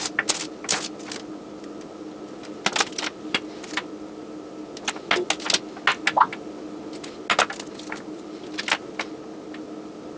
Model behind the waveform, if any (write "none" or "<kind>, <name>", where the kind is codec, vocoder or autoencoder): none